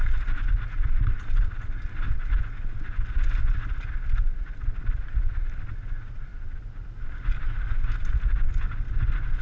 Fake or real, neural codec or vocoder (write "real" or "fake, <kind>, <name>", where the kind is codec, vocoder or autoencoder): real